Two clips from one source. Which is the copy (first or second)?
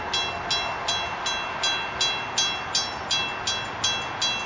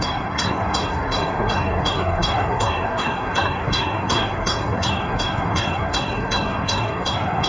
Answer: second